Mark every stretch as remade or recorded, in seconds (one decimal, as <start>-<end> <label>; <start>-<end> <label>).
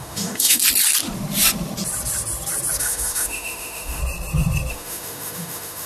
0.0-0.6 remade; 0.6-2.8 recorded; 2.8-4.0 remade; 4.0-4.7 recorded; 4.7-5.9 remade